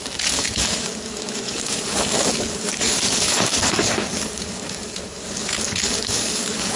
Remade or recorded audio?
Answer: remade